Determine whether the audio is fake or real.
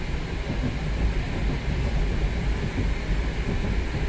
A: real